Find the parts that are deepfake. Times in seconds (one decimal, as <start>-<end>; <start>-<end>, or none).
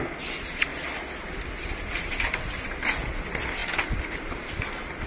none